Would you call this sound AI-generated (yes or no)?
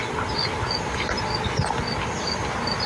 no